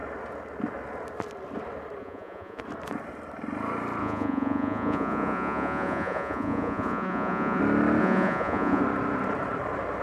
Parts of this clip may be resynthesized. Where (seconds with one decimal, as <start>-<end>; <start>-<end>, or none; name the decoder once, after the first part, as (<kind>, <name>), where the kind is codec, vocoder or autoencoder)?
2.0-2.6 (vocoder, Vocos); 4.0-7.6; 8.0-8.8